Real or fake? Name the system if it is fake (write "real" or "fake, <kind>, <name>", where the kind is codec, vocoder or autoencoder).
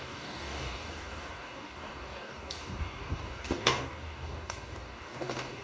fake, codec, DAC